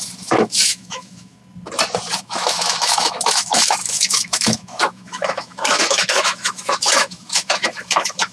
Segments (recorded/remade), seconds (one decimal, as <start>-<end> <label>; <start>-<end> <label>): 0.0-1.4 remade; 1.4-2.2 recorded; 2.2-8.3 remade